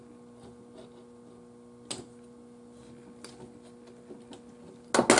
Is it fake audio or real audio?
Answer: real